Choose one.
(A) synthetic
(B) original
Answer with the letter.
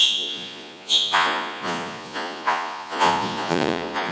A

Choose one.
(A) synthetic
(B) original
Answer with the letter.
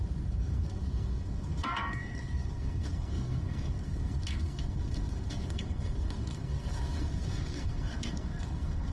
A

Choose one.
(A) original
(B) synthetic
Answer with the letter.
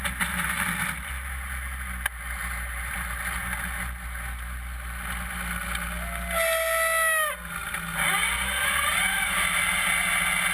A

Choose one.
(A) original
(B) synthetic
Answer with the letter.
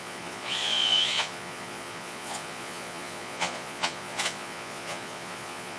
B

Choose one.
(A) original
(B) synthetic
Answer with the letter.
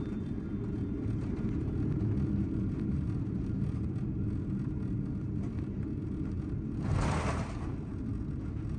A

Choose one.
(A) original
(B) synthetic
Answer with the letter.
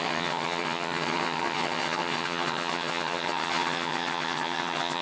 B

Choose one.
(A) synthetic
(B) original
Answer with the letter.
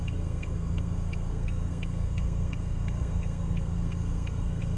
A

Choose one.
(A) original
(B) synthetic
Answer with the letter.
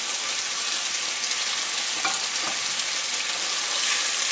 A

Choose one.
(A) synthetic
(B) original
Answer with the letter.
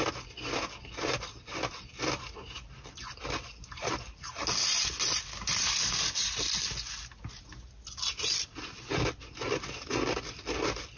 B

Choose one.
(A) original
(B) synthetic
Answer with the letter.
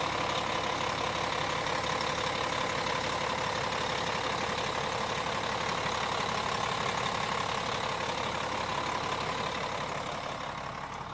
A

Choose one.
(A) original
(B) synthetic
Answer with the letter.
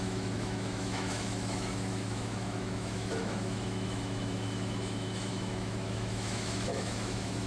B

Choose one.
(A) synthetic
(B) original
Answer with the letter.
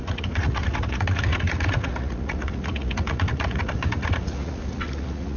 A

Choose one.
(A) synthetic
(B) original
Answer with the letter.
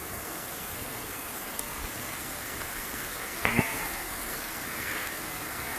A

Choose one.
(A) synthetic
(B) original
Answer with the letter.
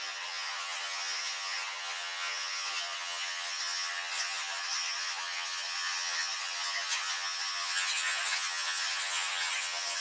A